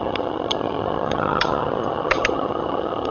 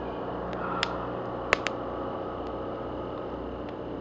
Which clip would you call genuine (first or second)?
second